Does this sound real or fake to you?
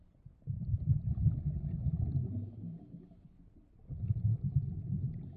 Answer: real